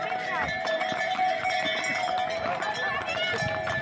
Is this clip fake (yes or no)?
no